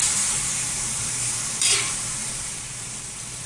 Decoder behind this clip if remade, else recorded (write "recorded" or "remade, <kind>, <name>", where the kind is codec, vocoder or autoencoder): remade, vocoder, BigVGAN v2